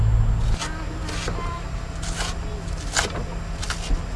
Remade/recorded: recorded